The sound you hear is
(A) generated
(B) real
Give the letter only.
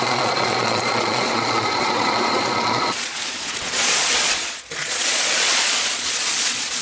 A